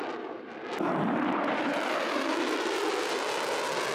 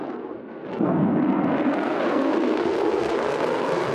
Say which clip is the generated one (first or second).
second